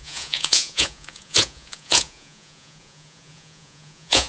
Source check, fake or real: fake